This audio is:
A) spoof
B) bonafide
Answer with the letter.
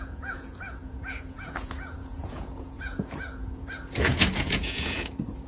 A